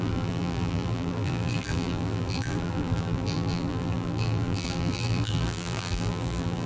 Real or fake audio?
fake